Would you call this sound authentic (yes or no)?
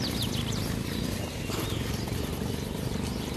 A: no